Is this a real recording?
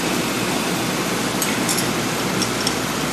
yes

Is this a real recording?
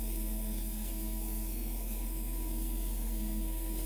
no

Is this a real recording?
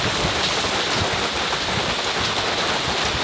yes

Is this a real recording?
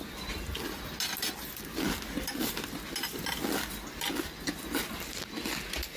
yes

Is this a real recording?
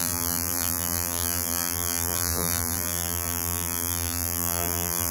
no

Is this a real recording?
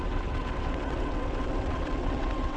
no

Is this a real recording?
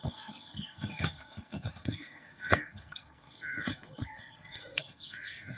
no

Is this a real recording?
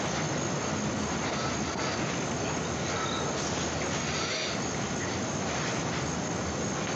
yes